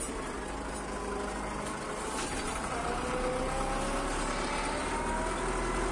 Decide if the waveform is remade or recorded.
recorded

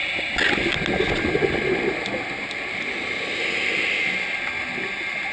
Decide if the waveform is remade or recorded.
recorded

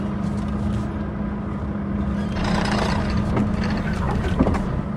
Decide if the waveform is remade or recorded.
recorded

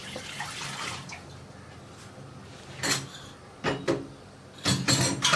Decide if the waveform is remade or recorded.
recorded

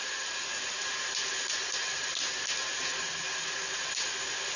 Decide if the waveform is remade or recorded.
recorded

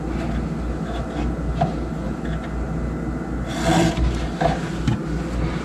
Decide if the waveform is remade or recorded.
recorded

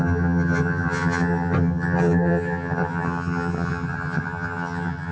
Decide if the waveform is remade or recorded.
remade